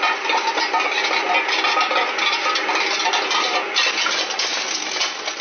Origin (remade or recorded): recorded